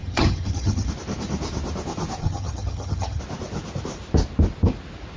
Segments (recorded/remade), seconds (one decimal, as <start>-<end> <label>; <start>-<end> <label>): 0.0-0.9 remade; 0.9-2.2 recorded; 2.2-3.2 remade; 3.2-5.2 recorded